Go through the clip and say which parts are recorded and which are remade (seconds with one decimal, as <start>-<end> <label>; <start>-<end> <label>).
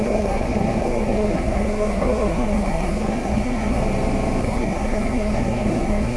0.0-3.8 remade; 3.8-4.4 recorded; 4.4-6.2 remade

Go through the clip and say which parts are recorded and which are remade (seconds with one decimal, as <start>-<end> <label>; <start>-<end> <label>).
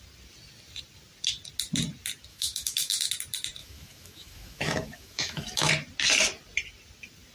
0.0-2.3 recorded; 2.3-3.1 remade; 3.1-3.6 recorded; 3.6-5.7 remade; 5.7-7.3 recorded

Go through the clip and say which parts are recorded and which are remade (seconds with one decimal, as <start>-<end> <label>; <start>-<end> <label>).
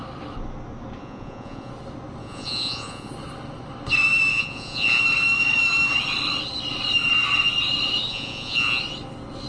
0.0-1.0 recorded; 1.0-1.7 remade; 1.7-2.2 recorded; 2.2-3.1 remade; 3.1-4.3 recorded; 4.3-5.0 remade; 5.0-8.1 recorded; 8.1-8.8 remade; 8.8-9.5 recorded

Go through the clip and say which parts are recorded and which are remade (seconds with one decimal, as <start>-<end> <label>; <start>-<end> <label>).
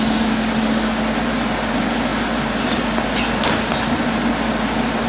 0.0-5.1 recorded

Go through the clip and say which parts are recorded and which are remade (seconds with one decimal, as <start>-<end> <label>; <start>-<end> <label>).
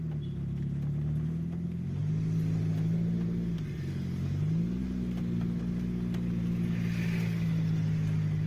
0.0-8.5 recorded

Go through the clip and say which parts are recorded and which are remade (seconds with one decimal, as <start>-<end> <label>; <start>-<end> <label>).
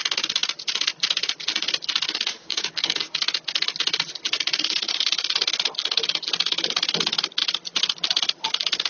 0.0-2.4 recorded; 2.4-3.0 remade; 3.0-8.9 recorded